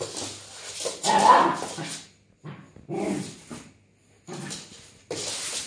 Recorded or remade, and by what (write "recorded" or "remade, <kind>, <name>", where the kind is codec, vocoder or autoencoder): recorded